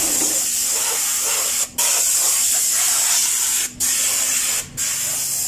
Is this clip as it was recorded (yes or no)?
yes